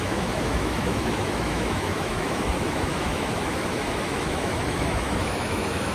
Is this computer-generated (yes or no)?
yes